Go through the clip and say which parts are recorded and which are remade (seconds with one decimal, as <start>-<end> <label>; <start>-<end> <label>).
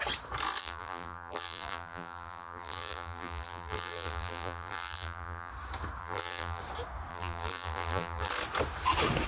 0.0-0.6 recorded; 0.6-5.5 remade; 5.5-6.0 recorded; 6.0-6.6 remade; 6.6-7.1 recorded; 7.1-8.3 remade; 8.3-9.3 recorded